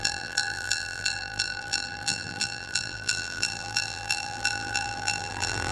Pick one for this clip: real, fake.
fake